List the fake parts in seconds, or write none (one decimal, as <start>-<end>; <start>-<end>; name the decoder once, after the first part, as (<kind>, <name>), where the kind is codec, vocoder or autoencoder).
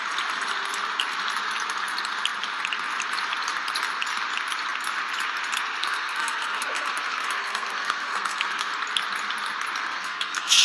5.8-8.7 (codec, SNAC); 9.8-10.6